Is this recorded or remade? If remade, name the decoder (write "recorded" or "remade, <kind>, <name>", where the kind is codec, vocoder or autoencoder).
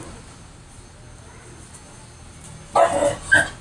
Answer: recorded